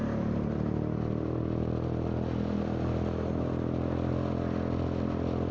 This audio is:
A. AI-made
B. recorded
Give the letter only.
B